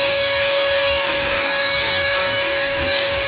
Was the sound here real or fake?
fake